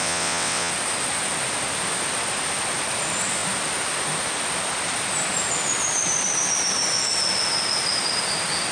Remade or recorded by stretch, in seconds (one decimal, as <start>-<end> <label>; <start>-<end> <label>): 0.0-0.7 remade; 0.7-8.7 recorded